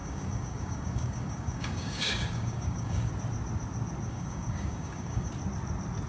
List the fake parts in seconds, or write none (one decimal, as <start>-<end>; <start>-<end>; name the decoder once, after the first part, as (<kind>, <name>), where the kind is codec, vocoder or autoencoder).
0.0-3.1 (codec, DAC); 4.1-5.3